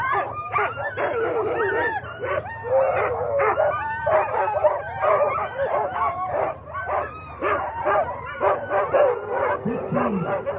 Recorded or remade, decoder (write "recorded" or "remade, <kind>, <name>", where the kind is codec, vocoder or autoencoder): remade, vocoder, BigVGAN v2